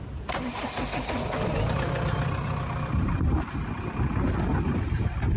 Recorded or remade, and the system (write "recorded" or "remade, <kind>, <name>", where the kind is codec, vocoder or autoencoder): recorded